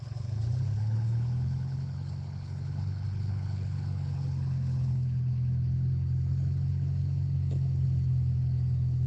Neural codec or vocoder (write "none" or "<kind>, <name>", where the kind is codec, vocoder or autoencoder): codec, HILCodec